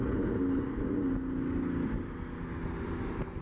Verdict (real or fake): real